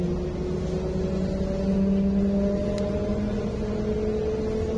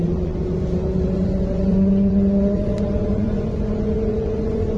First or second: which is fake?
second